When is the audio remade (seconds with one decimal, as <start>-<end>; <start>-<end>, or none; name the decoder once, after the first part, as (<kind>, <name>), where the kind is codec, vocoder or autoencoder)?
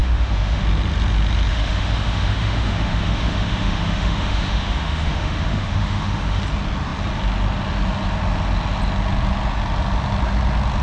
0.0-0.6 (autoencoder, DAC-VAE); 1.5-6.4